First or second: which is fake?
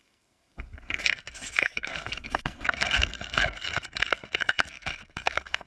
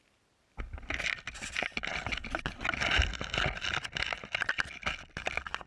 first